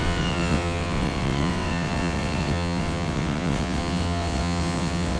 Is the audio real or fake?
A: fake